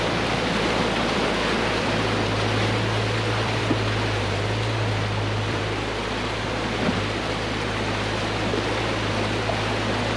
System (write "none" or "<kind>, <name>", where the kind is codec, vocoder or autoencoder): vocoder, BigVGAN v2